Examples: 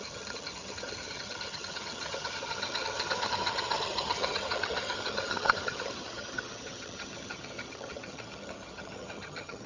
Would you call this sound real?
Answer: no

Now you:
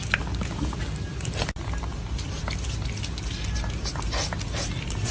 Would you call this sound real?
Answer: yes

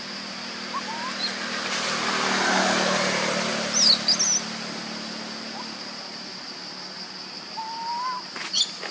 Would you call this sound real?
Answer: yes